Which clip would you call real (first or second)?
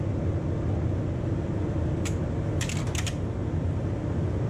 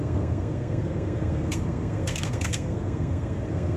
first